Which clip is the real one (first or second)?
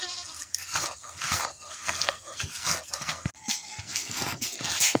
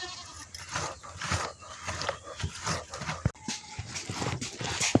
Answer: second